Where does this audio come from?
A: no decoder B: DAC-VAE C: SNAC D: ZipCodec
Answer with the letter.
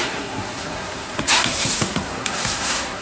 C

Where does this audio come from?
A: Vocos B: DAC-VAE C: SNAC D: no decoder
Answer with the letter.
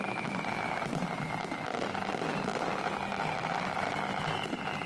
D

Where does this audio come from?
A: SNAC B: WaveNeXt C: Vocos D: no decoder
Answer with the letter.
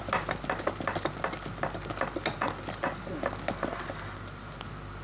D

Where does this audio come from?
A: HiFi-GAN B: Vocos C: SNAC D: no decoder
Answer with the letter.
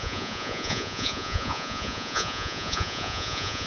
B